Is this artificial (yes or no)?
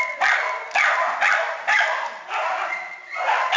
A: no